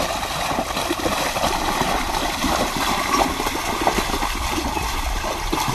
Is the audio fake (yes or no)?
no